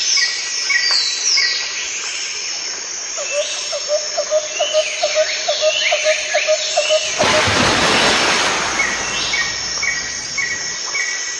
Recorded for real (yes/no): yes